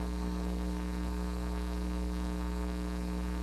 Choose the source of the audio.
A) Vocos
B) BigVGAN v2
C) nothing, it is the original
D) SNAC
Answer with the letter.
D